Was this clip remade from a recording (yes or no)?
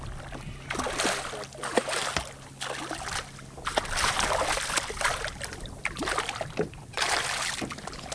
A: no